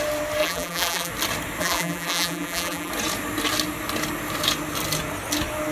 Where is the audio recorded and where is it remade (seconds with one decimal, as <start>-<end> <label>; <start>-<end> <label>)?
0.0-0.4 recorded; 0.4-1.1 remade; 1.1-1.6 recorded; 1.6-2.9 remade; 2.9-5.7 recorded